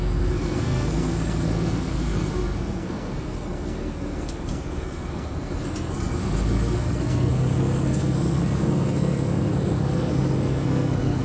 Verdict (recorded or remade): remade